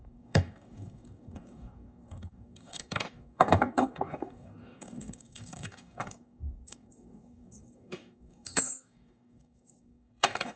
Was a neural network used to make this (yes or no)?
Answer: yes